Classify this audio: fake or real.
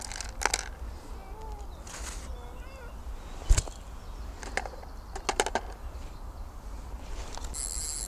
real